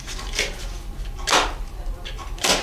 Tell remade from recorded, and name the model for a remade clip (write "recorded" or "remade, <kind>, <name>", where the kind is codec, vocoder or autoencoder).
recorded